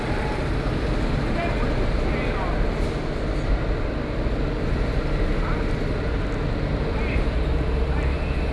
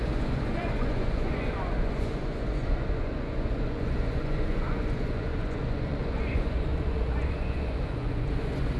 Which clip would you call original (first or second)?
first